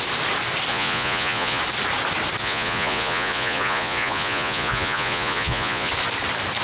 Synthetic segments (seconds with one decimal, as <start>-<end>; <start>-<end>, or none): 0.7-1.6; 2.4-5.9